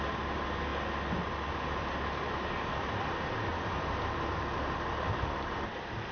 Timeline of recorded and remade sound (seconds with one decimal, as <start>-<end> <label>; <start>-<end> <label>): 0.0-6.1 recorded